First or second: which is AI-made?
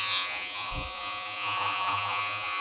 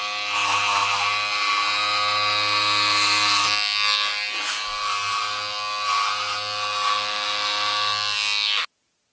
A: first